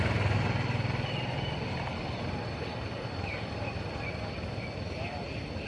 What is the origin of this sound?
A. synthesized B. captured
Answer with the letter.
B